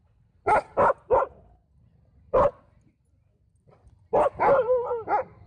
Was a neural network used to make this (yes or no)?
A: no